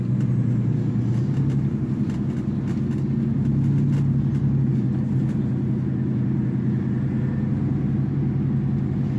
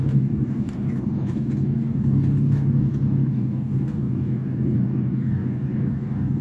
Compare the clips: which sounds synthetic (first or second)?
second